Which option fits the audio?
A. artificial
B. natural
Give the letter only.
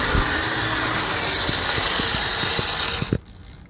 B